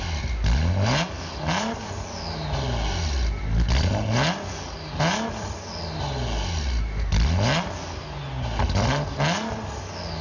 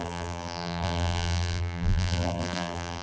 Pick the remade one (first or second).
second